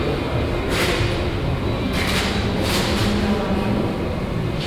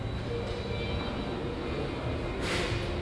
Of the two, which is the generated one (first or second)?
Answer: first